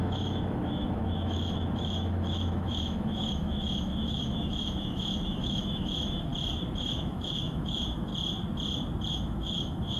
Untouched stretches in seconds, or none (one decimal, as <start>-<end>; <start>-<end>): 6.3-6.8; 8.1-9.1